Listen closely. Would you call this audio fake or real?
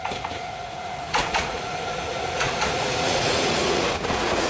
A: fake